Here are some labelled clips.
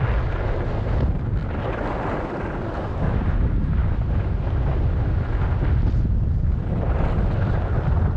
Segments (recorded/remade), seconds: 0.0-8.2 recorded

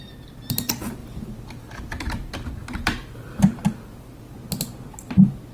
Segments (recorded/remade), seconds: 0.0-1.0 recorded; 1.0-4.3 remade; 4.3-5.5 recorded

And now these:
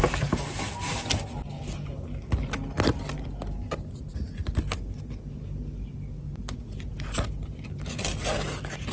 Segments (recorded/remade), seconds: 0.0-8.9 recorded